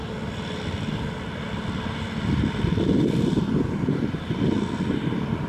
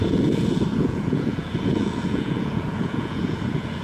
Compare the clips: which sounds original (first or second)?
first